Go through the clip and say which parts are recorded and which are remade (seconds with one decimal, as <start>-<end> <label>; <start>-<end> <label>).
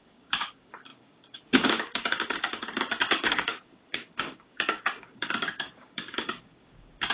0.0-7.1 remade